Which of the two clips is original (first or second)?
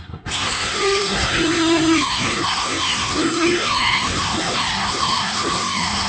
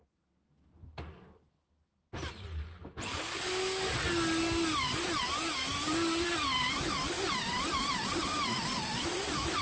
second